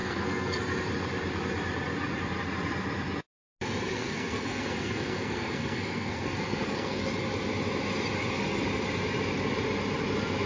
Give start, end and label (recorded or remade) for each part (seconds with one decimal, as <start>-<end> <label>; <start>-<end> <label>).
0.0-0.6 remade; 0.6-3.9 recorded; 3.9-7.0 remade; 7.0-10.5 recorded